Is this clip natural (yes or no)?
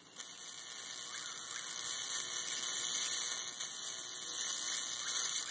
yes